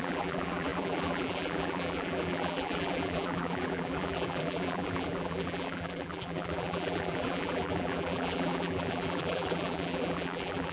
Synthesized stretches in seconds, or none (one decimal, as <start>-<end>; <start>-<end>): 0.0-10.7